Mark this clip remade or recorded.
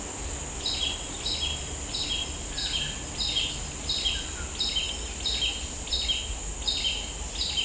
recorded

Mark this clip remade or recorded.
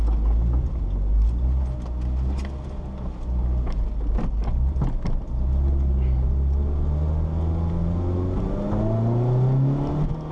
recorded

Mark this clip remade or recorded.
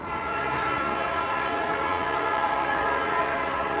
remade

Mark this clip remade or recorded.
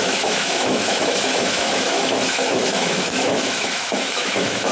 remade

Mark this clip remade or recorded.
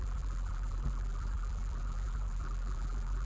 remade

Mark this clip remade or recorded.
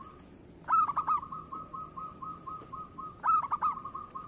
recorded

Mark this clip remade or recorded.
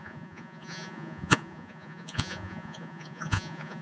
remade